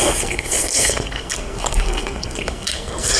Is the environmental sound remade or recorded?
remade